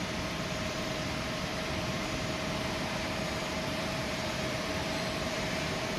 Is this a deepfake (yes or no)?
yes